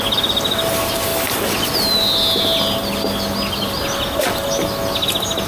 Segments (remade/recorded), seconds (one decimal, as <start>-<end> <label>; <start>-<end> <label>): 0.0-5.5 recorded